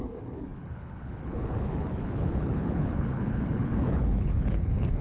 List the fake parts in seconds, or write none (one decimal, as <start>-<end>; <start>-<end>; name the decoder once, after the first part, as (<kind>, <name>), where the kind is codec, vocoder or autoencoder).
0.0-5.0 (codec, HILCodec)